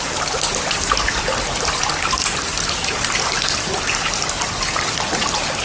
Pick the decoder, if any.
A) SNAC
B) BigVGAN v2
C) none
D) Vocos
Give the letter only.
C